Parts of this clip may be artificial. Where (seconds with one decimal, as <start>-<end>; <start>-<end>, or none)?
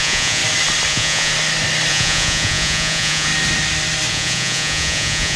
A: 0.0-0.4; 0.9-1.3; 1.9-3.3; 4.1-5.4